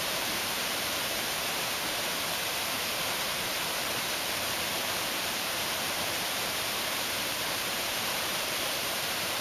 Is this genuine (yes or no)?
no